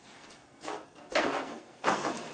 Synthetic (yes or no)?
yes